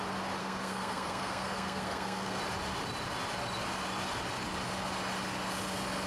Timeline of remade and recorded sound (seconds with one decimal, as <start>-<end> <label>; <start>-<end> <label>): 0.0-0.4 recorded; 0.4-2.4 remade; 2.4-6.1 recorded